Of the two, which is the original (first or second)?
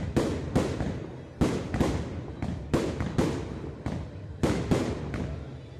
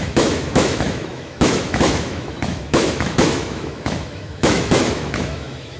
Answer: first